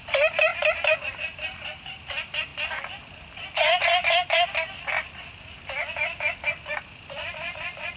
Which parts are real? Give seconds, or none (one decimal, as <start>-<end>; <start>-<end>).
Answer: 2.5-6.9